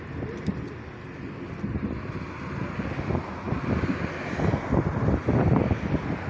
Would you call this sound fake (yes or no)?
no